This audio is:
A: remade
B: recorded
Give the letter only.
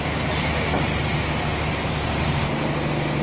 B